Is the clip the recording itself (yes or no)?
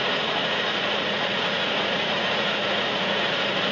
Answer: no